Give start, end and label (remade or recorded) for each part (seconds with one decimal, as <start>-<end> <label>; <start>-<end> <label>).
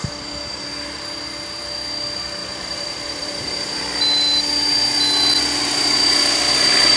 0.0-2.4 recorded; 2.4-3.7 remade; 3.7-7.0 recorded